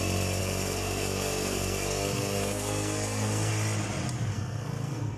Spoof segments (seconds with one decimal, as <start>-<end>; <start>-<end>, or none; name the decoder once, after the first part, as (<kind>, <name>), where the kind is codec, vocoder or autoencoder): 0.4-3.5 (codec, SNAC); 4.3-5.2

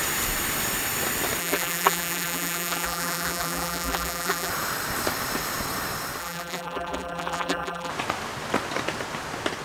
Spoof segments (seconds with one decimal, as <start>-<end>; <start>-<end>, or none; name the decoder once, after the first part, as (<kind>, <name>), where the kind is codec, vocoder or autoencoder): 1.4-4.5 (vocoder, BigVGAN v2); 6.2-7.9